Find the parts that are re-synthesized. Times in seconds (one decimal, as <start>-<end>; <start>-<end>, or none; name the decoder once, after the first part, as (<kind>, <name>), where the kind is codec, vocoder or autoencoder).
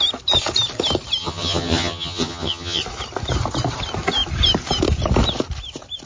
1.2-2.8 (vocoder, HiFi-GAN)